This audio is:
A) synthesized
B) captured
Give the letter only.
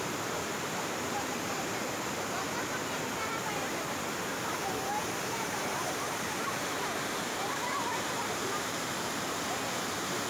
A